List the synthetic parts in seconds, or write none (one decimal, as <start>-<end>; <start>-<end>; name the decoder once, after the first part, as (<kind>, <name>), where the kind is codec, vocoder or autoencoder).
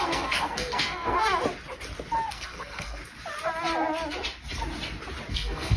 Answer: 0.0-1.3 (codec, SNAC); 2.3-3.0; 5.3-5.8